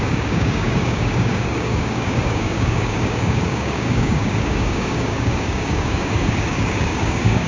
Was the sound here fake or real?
fake